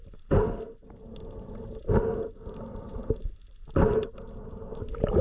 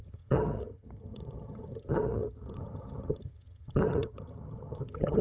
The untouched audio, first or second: first